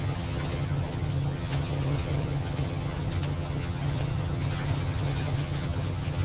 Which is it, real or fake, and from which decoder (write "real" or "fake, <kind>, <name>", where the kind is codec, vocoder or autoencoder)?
fake, vocoder, HiFi-GAN